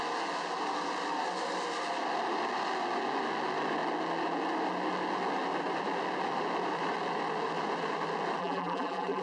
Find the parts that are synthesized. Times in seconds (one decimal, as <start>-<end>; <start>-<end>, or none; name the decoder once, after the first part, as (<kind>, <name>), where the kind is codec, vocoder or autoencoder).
8.4-9.2 (vocoder, BigVGAN v2)